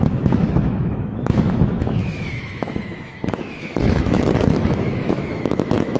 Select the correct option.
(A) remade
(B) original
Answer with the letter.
A